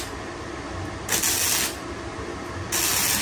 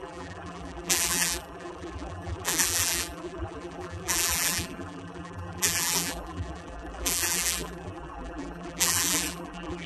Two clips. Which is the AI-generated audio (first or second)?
second